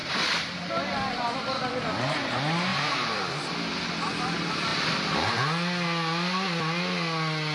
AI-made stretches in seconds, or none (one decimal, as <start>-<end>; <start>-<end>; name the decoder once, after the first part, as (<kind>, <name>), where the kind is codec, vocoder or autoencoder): 0.0-0.7 (vocoder, BigVGAN v2); 2.7-3.5

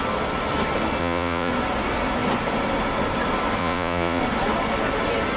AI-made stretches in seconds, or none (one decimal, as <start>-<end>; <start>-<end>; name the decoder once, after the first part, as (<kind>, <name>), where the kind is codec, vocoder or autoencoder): 1.0-1.5 (vocoder, Vocos); 3.6-4.2

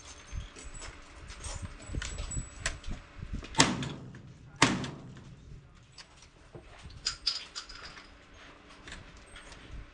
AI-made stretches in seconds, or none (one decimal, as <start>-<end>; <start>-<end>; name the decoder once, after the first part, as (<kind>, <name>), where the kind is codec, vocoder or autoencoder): none

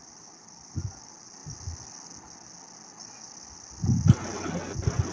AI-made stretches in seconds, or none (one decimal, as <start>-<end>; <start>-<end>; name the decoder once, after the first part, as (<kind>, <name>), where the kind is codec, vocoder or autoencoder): none

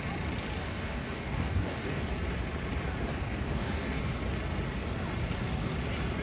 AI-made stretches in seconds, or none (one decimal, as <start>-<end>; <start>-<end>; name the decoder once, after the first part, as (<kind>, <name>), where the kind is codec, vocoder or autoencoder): 0.6-2.0 (codec, DAC); 3.1-4.0